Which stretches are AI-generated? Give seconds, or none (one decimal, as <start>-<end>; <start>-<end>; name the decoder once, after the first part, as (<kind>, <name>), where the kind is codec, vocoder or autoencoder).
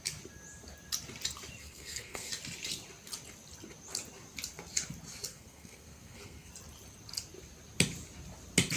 1.6-2.3 (codec, SNAC); 5.3-6.5